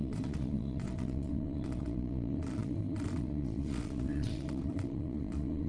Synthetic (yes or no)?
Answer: yes